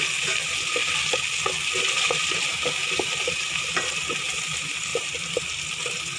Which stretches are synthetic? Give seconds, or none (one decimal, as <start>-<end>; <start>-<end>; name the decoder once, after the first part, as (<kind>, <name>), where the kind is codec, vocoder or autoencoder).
none